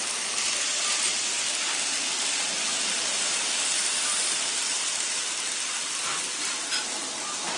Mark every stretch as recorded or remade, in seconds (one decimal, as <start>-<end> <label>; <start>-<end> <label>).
0.0-7.6 recorded